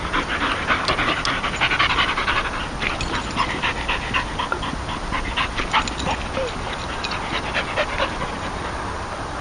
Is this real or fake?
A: real